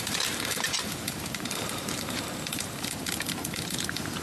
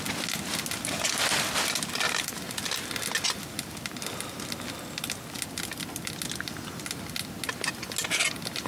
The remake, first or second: first